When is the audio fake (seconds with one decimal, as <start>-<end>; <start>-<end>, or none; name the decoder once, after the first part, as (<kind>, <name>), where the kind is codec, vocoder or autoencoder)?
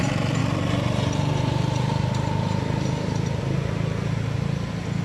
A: none